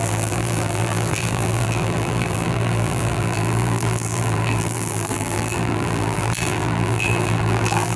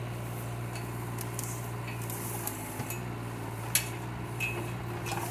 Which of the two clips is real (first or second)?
second